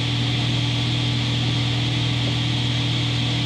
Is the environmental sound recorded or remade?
recorded